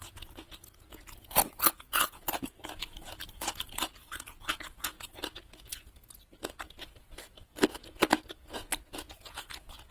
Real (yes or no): no